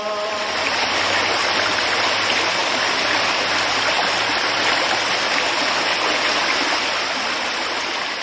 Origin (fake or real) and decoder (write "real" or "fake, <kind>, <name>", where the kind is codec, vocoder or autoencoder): real